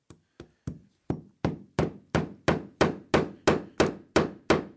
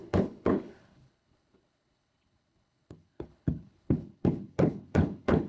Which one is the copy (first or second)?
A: second